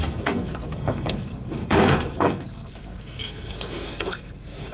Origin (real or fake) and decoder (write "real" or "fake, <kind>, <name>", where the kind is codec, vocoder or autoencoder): fake, codec, SNAC